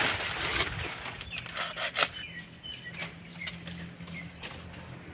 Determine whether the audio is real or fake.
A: real